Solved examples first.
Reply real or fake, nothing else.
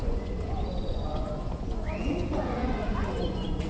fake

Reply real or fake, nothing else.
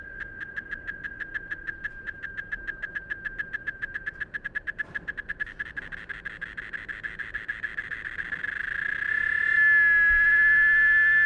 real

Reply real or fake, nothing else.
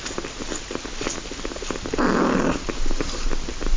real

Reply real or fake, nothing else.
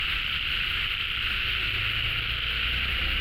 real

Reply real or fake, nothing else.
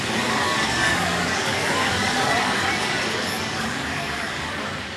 fake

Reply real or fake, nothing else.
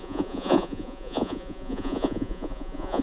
fake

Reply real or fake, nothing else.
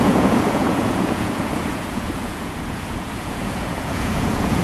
fake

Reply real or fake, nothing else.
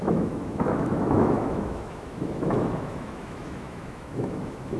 fake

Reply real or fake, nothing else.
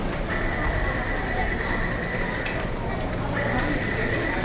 real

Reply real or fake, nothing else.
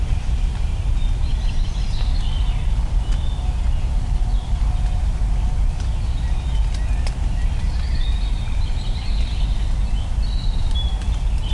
fake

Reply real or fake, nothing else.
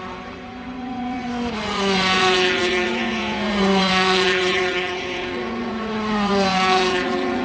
fake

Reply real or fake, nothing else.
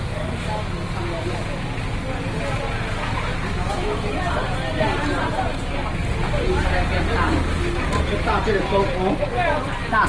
real